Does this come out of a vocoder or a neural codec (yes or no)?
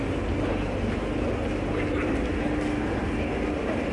no